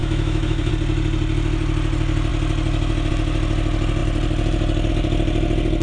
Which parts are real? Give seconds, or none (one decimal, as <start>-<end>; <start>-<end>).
0.7-5.8